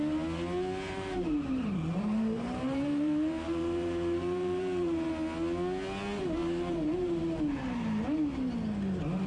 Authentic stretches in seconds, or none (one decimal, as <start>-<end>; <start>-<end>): 0.0-0.9; 5.1-6.4; 7.2-9.3